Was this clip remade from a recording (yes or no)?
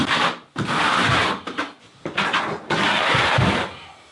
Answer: no